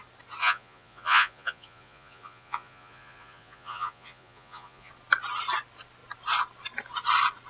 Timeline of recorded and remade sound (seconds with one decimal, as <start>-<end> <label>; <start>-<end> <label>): 0.0-0.4 recorded; 0.4-4.9 remade; 4.9-7.5 recorded